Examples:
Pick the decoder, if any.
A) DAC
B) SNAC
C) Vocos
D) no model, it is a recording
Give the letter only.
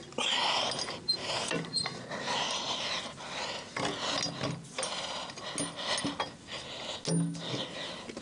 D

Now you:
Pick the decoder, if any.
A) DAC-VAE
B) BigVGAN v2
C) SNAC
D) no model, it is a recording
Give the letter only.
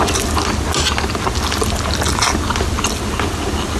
D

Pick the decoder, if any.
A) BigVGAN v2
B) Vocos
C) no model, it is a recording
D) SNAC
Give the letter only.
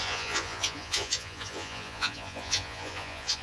B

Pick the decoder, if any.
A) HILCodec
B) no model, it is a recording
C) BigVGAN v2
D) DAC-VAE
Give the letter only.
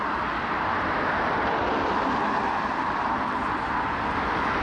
B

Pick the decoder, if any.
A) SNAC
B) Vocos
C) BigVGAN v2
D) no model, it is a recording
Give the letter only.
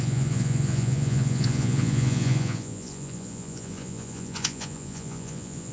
B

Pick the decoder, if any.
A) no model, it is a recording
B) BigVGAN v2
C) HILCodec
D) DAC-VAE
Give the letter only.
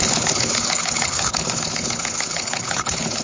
C